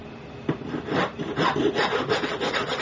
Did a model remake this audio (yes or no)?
no